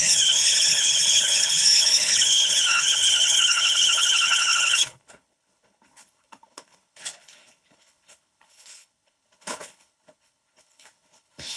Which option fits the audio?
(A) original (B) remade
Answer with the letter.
B